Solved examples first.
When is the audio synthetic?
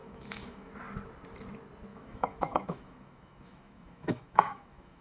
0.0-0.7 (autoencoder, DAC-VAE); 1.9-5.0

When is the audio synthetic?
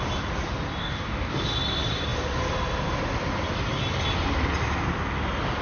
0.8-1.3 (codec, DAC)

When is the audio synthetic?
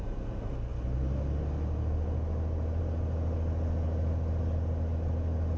none